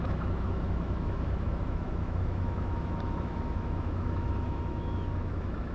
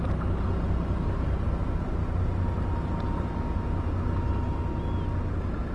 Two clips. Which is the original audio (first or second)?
second